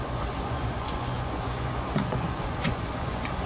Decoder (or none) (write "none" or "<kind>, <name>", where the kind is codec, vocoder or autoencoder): vocoder, Vocos